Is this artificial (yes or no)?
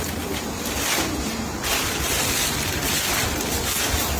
no